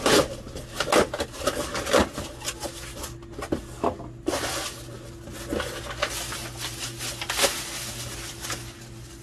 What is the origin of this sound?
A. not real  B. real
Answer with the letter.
B